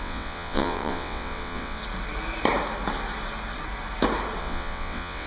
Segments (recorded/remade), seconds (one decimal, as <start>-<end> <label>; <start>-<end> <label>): 0.0-1.8 remade; 1.8-4.4 recorded; 4.4-5.3 remade